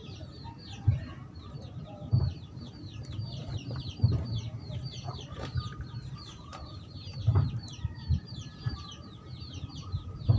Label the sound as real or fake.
fake